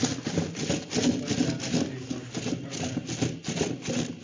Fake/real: real